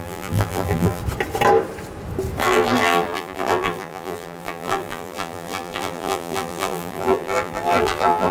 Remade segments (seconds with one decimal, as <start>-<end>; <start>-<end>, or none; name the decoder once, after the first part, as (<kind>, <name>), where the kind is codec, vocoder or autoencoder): 0.0-1.0 (vocoder, BigVGAN v2); 2.4-8.3